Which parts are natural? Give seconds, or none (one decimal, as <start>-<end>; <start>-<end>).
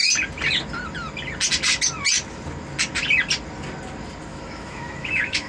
0.0-4.3